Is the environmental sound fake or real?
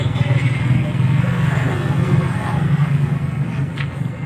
fake